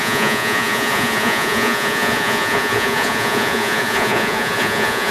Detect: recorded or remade remade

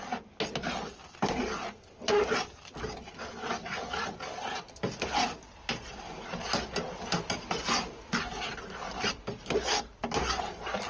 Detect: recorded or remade recorded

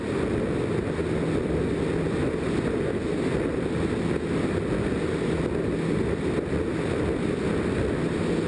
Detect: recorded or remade recorded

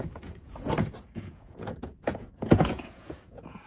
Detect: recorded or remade remade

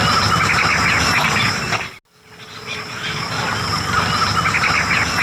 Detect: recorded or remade recorded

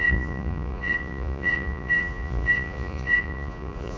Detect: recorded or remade remade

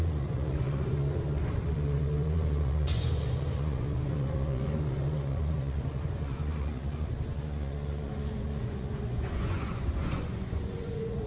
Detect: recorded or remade remade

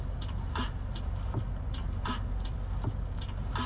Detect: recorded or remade recorded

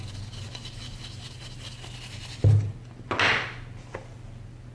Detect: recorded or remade recorded